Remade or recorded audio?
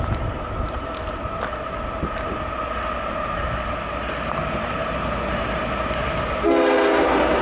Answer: recorded